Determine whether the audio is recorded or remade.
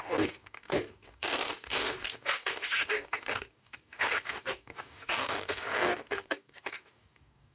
remade